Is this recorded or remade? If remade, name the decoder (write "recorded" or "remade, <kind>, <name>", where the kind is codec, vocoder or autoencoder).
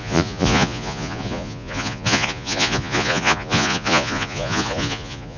remade, vocoder, Vocos